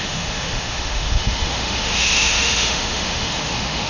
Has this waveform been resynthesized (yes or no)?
yes